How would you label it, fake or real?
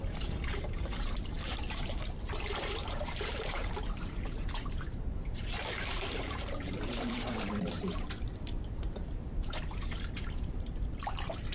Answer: fake